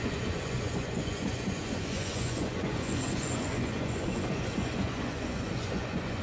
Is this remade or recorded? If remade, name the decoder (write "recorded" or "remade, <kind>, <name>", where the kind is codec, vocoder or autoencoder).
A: remade, vocoder, Vocos